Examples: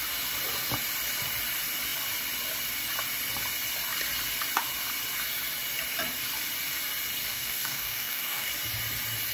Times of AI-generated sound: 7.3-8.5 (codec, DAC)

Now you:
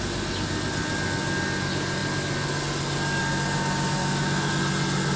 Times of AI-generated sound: 4.0-4.5 (autoencoder, DAC-VAE)

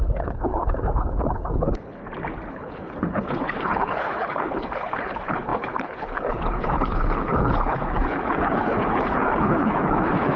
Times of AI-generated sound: 0.0-2.0 (codec, HILCodec); 2.5-10.4

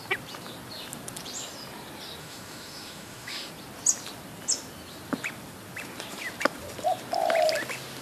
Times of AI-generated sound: 2.2-3.5 (autoencoder, DAC-VAE)